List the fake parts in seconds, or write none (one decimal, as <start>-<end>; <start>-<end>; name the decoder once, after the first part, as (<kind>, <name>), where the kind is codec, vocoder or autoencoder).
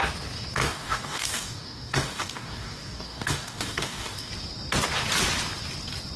0.6-4.3 (codec, DAC)